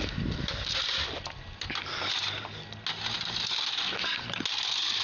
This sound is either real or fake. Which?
real